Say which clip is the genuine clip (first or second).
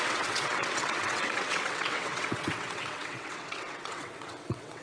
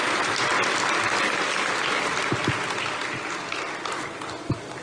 second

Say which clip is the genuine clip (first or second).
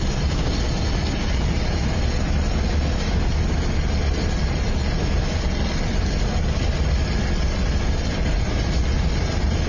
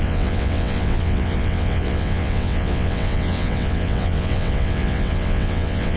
first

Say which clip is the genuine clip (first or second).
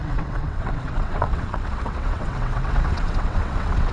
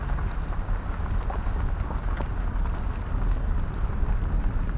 second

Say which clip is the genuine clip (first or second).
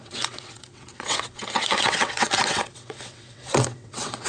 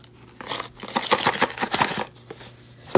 second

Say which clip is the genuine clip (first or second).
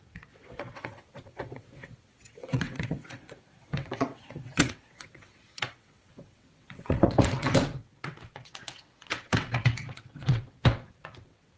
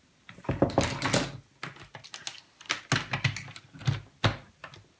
second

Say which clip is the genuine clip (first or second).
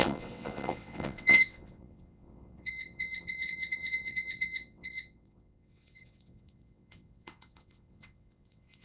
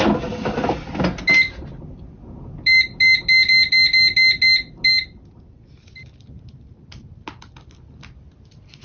second